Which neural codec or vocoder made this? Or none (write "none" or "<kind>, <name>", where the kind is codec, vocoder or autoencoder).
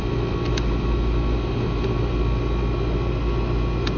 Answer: none